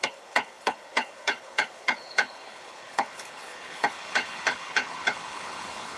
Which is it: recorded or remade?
remade